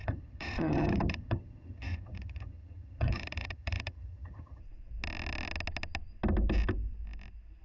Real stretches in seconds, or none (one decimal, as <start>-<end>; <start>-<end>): 4.6-7.6